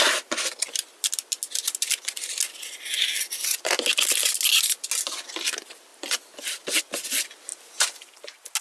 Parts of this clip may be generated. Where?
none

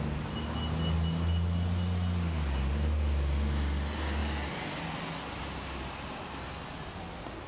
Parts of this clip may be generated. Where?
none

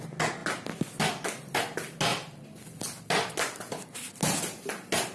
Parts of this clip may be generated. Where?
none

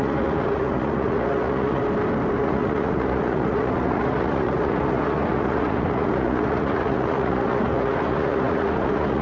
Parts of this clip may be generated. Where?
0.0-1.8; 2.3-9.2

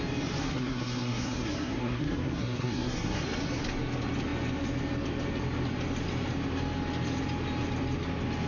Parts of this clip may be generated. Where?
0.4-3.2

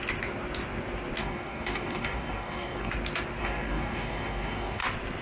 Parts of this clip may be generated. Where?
1.2-2.9; 3.4-4.8